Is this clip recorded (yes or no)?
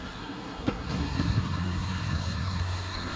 no